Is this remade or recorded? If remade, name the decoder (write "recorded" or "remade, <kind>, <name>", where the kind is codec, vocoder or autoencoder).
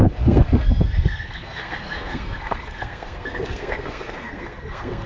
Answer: remade, codec, SNAC